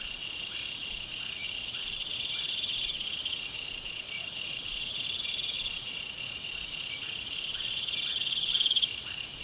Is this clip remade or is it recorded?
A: remade